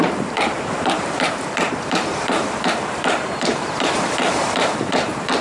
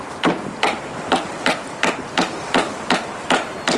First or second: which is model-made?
first